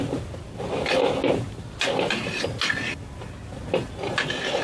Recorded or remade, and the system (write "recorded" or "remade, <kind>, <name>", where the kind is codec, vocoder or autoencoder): recorded